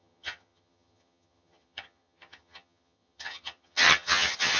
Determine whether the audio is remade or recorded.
remade